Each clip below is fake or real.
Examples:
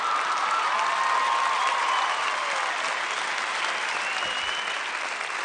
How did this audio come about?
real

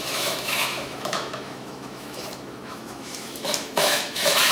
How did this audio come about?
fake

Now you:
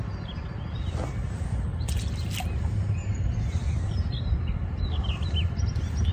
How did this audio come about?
real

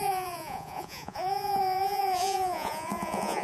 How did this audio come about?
fake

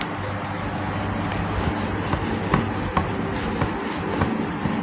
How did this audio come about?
real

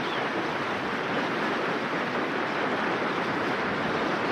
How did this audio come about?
real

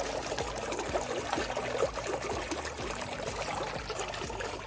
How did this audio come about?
real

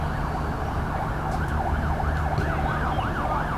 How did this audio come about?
real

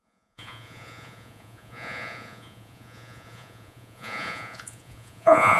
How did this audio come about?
fake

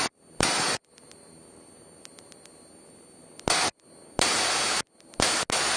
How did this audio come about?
real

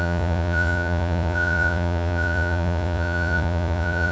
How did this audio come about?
fake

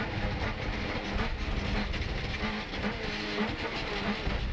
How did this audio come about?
real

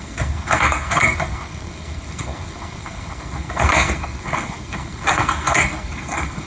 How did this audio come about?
fake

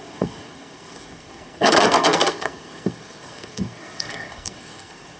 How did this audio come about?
fake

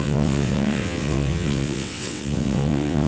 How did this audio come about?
fake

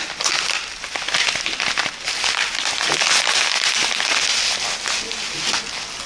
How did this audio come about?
real